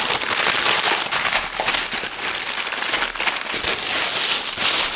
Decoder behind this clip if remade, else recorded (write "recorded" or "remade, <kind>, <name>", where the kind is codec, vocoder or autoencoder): recorded